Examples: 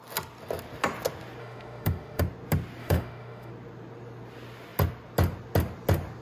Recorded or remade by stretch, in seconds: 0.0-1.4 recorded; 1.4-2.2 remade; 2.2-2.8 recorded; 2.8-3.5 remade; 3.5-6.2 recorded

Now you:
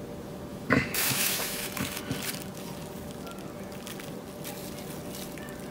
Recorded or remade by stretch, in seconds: 0.0-0.5 recorded; 0.5-2.0 remade; 2.0-5.7 recorded

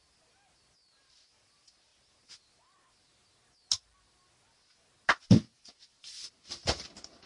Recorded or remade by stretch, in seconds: 0.0-7.3 recorded

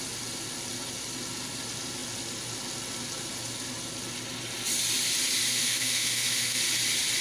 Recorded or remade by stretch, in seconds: 0.0-5.5 recorded; 5.5-6.6 remade; 6.6-7.2 recorded

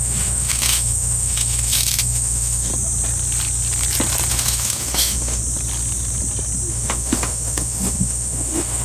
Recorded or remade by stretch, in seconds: 0.0-2.7 remade; 2.7-4.3 recorded; 4.3-5.4 remade; 5.4-6.7 recorded; 6.7-8.8 remade